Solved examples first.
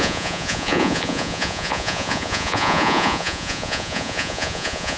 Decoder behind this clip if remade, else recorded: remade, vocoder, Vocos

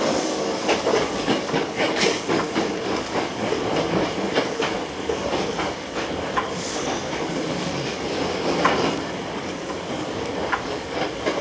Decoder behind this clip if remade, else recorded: remade, codec, DAC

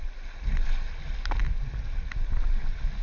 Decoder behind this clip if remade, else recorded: recorded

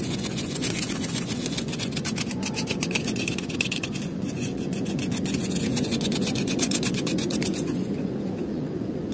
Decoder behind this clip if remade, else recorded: remade, vocoder, Vocos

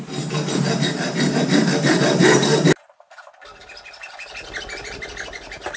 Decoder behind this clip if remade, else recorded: recorded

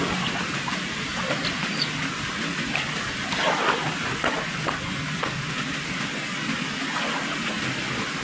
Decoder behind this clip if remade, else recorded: recorded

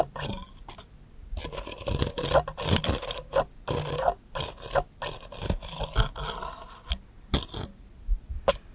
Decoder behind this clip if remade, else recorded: recorded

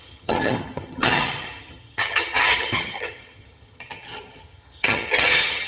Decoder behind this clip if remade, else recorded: remade, vocoder, HiFi-GAN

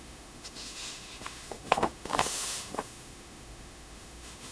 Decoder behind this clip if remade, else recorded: remade, autoencoder, DAC-VAE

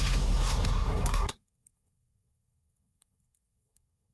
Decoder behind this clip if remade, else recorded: remade, codec, SNAC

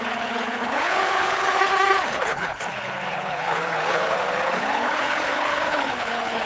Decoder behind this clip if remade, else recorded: remade, codec, HILCodec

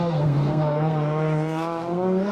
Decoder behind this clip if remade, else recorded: remade, codec, SNAC